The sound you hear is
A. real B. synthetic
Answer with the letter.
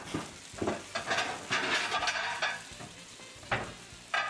A